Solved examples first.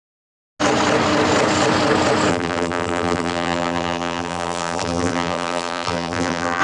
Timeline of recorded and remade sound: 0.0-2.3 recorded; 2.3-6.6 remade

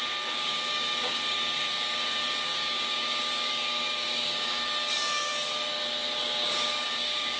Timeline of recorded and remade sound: 0.0-5.3 remade; 5.3-6.2 recorded; 6.2-7.4 remade

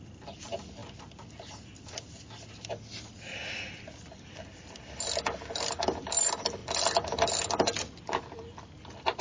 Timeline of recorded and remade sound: 0.0-9.2 recorded